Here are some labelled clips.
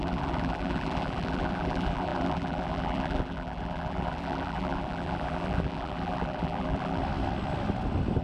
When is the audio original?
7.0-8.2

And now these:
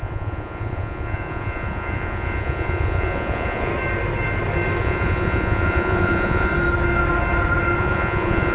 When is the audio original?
3.7-4.8; 6.5-7.8

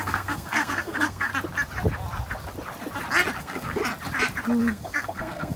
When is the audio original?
1.3-3.4; 3.8-4.6